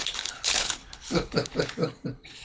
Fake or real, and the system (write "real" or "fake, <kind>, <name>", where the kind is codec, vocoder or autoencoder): fake, codec, HILCodec